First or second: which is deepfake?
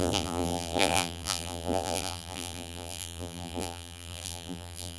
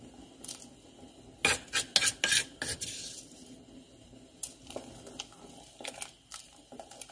first